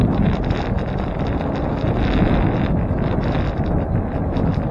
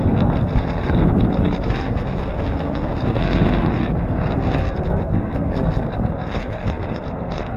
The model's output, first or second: second